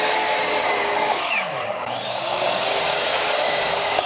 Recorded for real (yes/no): no